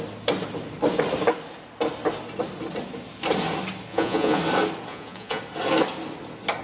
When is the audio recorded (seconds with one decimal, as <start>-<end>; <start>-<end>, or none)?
0.0-3.9; 4.4-4.9; 5.4-6.6